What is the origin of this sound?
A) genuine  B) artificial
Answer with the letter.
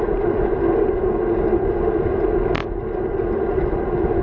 A